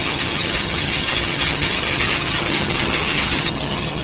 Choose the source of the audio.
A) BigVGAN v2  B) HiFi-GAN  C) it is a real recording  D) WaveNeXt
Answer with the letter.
B